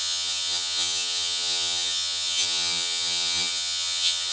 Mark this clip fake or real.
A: fake